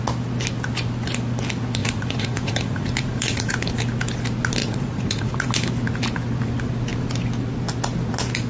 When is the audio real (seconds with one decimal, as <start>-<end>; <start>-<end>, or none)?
0.0-1.8; 3.5-4.6; 5.5-8.5